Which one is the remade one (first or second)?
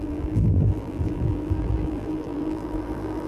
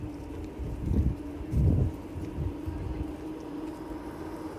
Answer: first